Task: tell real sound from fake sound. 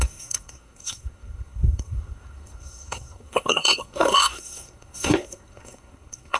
fake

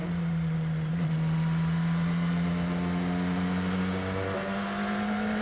real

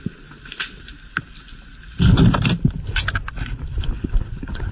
real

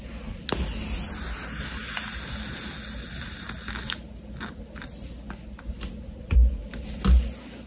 real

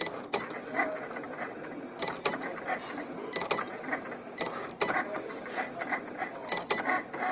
real